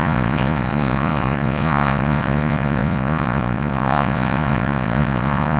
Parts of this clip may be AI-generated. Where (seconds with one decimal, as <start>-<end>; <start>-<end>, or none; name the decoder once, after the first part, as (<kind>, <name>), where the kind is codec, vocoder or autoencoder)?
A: 0.0-5.6 (vocoder, Vocos)